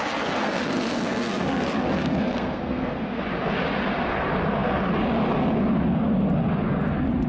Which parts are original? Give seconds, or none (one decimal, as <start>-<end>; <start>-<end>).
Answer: 0.0-0.4; 3.2-7.3